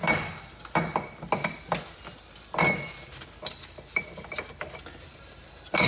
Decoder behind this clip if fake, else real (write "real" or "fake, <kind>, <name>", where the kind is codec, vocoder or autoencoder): real